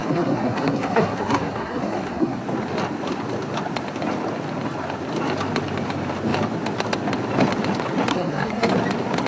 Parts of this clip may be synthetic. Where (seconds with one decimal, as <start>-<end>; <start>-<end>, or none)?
0.0-2.4; 8.1-8.7